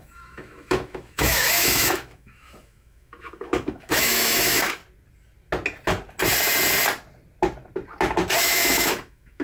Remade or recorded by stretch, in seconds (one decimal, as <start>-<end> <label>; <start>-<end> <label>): 0.0-4.8 remade; 4.8-8.4 recorded; 8.4-9.4 remade